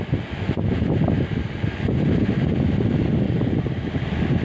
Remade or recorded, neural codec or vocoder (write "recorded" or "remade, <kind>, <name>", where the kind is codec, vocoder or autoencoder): remade, vocoder, BigVGAN v2